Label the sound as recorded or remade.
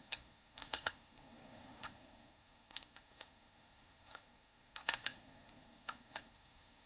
remade